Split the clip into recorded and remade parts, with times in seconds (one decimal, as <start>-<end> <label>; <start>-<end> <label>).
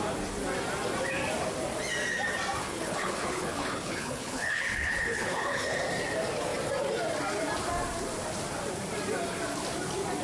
0.0-2.6 recorded; 2.6-5.8 remade; 5.8-10.2 recorded